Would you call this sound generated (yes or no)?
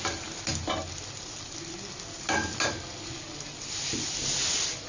no